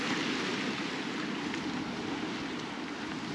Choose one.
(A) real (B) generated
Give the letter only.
A